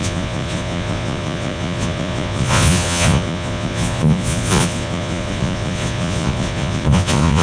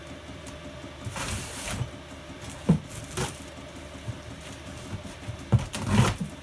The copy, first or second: first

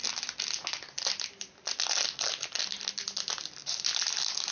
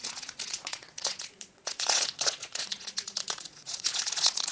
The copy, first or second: second